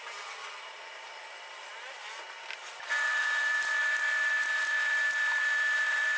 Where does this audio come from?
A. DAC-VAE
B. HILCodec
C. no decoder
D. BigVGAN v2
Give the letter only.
C